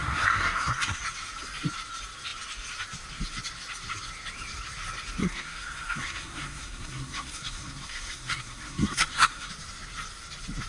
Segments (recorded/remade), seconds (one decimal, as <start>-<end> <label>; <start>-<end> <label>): 0.0-1.0 remade; 1.0-5.2 recorded; 5.2-9.5 remade; 9.5-10.7 recorded